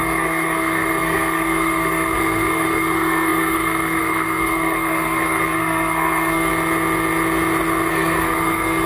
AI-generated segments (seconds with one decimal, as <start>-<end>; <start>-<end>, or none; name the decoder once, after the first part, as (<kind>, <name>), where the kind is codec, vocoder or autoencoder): 0.0-6.5 (codec, SNAC); 7.9-8.9